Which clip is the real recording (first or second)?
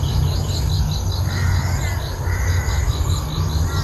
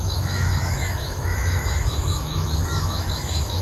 first